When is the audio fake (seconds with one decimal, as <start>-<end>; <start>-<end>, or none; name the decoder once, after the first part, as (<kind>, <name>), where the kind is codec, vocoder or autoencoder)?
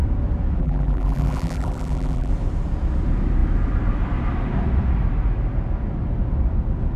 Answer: 0.6-2.3 (vocoder, BigVGAN v2)